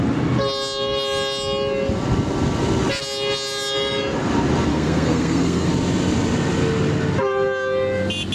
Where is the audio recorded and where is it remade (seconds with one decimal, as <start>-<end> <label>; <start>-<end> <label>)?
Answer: 0.0-4.7 recorded; 4.7-5.7 remade; 5.7-8.3 recorded